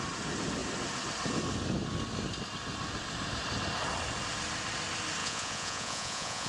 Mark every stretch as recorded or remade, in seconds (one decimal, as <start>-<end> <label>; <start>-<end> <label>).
0.0-5.2 recorded; 5.2-6.5 remade